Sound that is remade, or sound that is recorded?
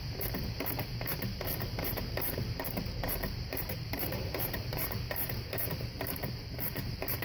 remade